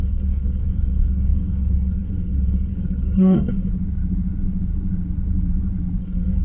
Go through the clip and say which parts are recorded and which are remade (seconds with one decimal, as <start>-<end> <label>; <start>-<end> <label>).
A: 0.0-3.7 remade; 3.7-6.0 recorded; 6.0-6.4 remade